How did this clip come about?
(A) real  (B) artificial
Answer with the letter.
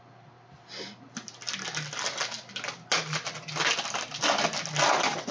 A